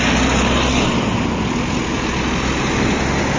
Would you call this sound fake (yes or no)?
no